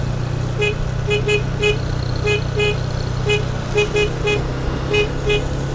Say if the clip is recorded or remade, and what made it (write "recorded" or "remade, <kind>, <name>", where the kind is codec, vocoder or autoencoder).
recorded